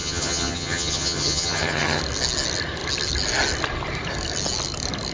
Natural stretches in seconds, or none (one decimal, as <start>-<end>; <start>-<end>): 2.0-5.1